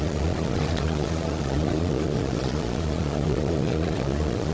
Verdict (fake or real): fake